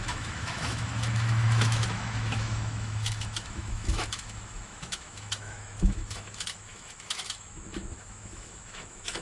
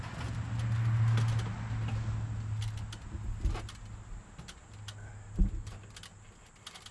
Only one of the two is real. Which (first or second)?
second